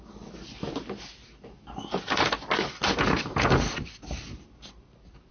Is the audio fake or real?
real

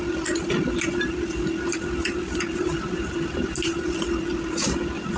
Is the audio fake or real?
real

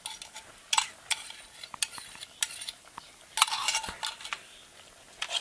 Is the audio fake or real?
real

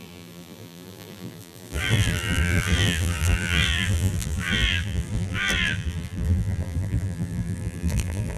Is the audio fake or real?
fake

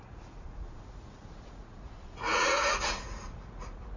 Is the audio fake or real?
fake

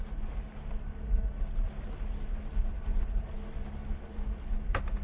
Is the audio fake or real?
real